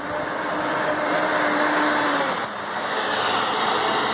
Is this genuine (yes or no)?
yes